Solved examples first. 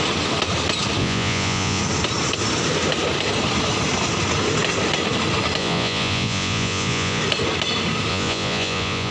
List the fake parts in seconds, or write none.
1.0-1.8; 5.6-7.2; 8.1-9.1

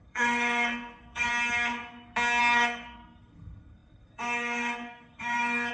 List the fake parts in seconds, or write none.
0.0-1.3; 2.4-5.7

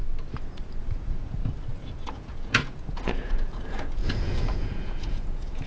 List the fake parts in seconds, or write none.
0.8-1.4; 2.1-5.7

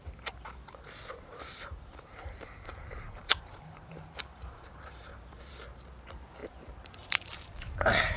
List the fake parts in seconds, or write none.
0.0-8.2

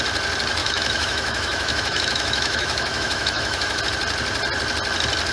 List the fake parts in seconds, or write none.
0.6-3.8

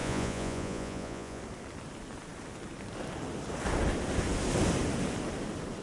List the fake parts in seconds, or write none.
0.0-1.4

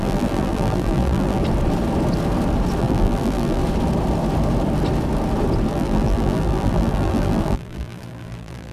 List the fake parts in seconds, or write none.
0.0-1.4; 2.8-3.6; 5.7-8.7

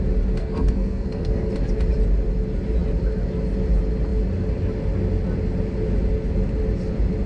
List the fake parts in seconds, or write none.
0.4-1.5